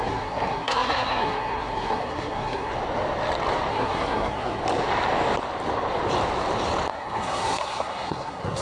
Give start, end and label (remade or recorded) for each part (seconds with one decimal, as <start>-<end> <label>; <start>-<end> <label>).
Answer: 0.0-2.7 remade; 2.7-3.7 recorded; 3.7-4.6 remade; 4.6-6.9 recorded; 6.9-8.6 remade